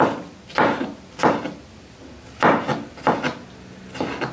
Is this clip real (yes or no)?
yes